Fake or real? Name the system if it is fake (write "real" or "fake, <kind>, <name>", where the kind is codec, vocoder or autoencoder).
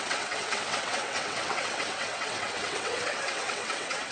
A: fake, vocoder, WaveNeXt